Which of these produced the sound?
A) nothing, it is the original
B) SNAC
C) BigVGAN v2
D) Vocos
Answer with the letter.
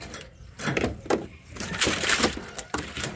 C